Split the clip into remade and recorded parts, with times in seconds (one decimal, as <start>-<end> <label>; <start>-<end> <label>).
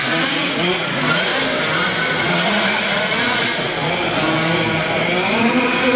0.0-1.3 remade; 1.3-2.1 recorded; 2.1-3.7 remade; 3.7-5.4 recorded; 5.4-6.0 remade